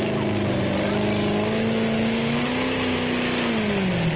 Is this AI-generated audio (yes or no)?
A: no